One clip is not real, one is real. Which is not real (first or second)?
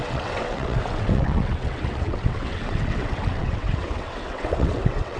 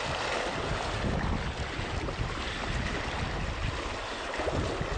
first